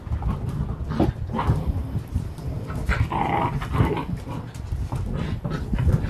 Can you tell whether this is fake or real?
real